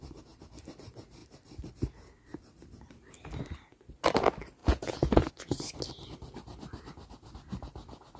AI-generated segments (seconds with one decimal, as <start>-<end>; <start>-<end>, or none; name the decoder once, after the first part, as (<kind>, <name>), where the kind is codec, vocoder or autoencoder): 4.6-5.3 (vocoder, Vocos)